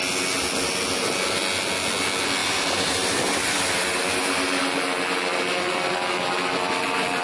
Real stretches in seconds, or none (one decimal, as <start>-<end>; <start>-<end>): 0.0-2.4; 4.0-7.2